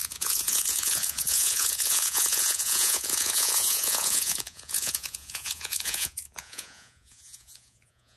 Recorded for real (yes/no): no